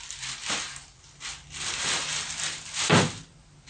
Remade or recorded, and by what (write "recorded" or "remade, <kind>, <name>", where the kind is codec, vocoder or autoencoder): recorded